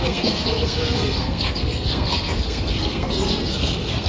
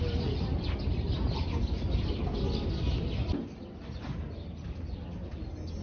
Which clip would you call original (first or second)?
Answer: second